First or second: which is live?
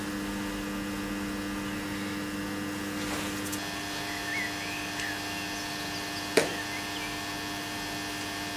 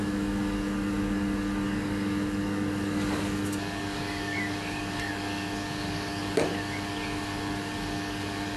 first